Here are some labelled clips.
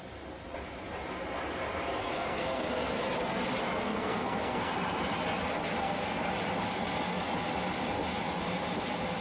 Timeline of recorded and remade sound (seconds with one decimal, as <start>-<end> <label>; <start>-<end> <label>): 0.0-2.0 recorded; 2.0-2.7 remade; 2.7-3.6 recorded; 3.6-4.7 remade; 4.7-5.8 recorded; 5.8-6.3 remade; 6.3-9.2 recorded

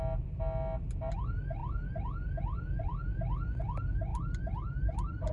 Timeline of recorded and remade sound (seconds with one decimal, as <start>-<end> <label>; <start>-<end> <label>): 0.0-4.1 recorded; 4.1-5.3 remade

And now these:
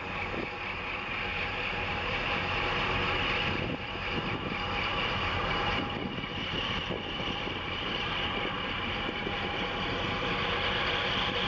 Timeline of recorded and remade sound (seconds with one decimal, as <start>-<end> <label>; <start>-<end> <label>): 0.0-1.3 recorded; 1.3-2.2 remade; 2.2-4.9 recorded; 4.9-9.5 remade; 9.5-11.5 recorded

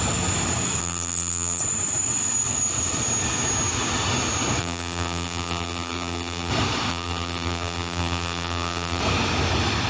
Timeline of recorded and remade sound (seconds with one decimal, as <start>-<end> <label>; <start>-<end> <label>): 0.0-0.8 recorded; 0.8-1.6 remade; 1.6-4.6 recorded; 4.6-6.5 remade; 6.5-6.9 recorded; 6.9-9.0 remade; 9.0-9.9 recorded